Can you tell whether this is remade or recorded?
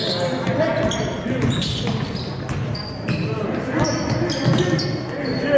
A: recorded